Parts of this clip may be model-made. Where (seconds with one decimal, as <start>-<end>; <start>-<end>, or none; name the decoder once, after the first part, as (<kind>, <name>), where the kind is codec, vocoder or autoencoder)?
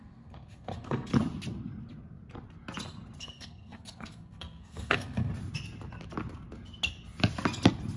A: 0.0-1.1 (codec, SNAC); 3.2-5.3